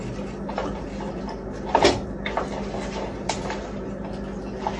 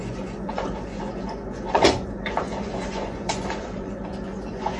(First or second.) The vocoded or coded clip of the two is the second